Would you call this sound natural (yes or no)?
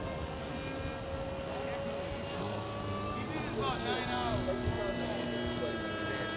yes